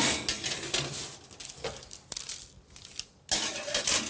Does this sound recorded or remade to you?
recorded